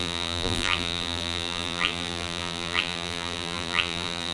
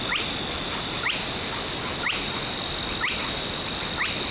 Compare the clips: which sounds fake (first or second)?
first